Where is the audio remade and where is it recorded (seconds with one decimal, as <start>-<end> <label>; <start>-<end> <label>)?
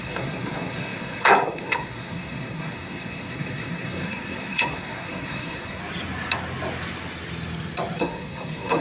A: 0.0-5.8 remade; 5.8-8.0 recorded; 8.0-8.8 remade